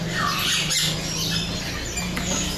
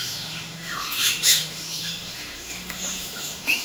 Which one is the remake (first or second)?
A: second